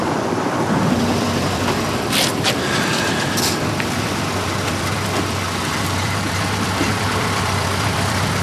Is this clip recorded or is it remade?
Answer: remade